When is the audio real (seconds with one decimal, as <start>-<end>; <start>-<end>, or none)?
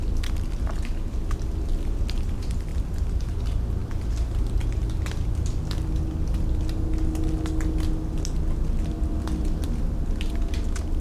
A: 0.0-11.0